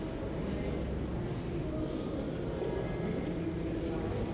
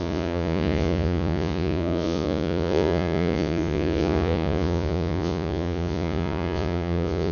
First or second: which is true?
first